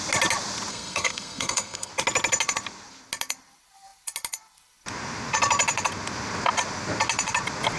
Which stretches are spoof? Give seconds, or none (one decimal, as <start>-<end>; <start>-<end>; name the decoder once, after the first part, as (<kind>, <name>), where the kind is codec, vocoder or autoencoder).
0.7-1.9 (codec, SNAC)

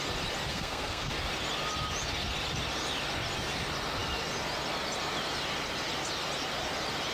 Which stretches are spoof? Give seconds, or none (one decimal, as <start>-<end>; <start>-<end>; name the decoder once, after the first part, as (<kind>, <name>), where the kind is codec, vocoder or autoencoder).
0.5-1.1 (codec, SNAC)

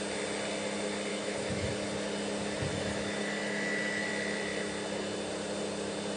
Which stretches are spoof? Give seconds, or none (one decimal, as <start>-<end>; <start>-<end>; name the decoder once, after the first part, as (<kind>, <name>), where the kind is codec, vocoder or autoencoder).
1.1-1.7 (autoencoder, DAC-VAE); 2.7-4.1

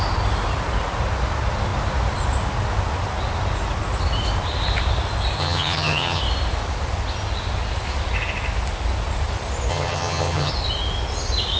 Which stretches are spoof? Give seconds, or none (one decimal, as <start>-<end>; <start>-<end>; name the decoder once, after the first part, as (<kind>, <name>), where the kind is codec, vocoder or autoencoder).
5.4-6.2 (vocoder, HiFi-GAN); 9.7-10.5

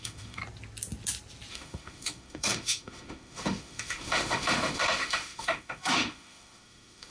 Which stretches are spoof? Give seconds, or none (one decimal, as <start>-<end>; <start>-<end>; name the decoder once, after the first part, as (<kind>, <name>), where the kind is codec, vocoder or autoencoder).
0.0-0.4 (autoencoder, DAC-VAE); 1.5-7.1

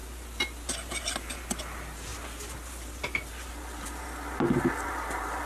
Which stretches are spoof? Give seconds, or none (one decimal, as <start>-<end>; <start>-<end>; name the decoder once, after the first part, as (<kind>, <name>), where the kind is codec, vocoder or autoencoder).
none

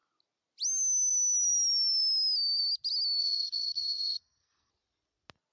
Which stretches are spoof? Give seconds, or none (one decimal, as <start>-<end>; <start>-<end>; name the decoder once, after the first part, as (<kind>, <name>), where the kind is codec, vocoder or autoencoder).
3.2-4.7 (codec, SNAC)